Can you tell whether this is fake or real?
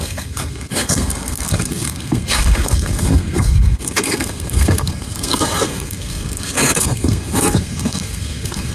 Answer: fake